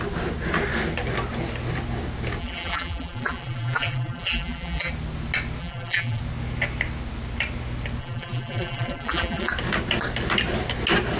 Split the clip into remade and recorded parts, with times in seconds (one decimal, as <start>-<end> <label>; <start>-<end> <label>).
0.0-2.4 recorded; 2.4-4.9 remade; 4.9-5.6 recorded; 5.6-6.2 remade; 6.2-8.0 recorded; 8.0-9.5 remade; 9.5-11.2 recorded